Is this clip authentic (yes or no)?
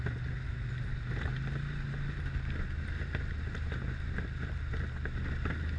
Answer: yes